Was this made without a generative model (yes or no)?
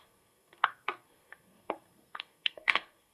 no